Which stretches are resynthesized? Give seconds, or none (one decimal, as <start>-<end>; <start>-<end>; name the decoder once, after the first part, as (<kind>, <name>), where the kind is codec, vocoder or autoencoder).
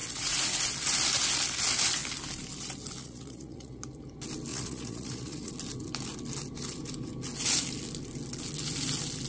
0.0-0.6 (vocoder, Vocos); 3.0-3.8; 4.5-5.5